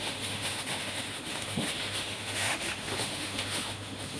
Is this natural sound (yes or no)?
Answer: no